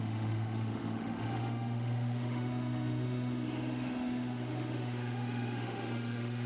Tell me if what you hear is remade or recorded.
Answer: remade